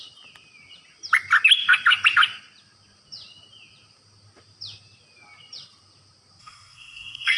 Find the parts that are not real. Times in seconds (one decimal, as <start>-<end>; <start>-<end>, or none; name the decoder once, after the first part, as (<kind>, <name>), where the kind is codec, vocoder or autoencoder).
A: 6.4-7.4 (codec, SNAC)